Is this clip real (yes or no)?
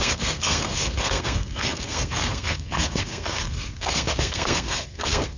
no